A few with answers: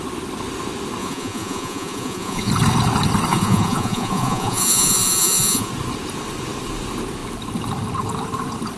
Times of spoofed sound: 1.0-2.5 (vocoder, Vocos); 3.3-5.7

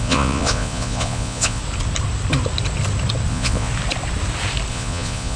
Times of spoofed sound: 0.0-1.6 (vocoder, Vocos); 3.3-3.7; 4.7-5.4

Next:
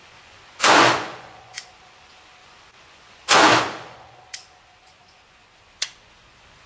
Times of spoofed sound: 0.0-6.7 (vocoder, Vocos)

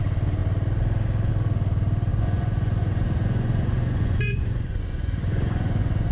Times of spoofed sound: 2.1-6.1 (vocoder, Vocos)